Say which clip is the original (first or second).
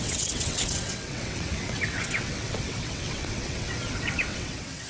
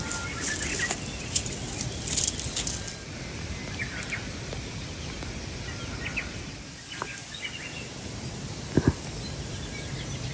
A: second